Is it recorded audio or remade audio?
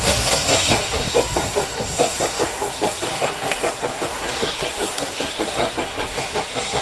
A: remade